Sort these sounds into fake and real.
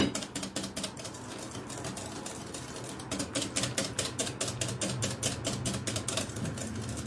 real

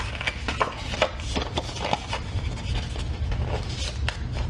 real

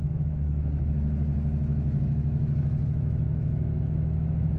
fake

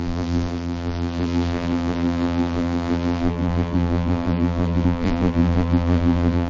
fake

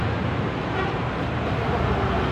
fake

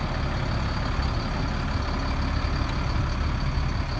real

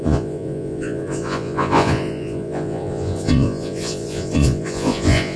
fake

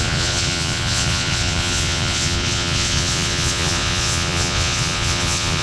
fake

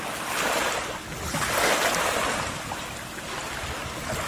real